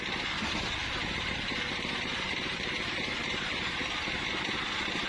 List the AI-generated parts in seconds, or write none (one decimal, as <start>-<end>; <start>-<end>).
0.8-3.9